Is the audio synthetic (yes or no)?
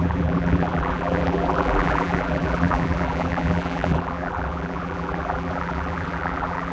yes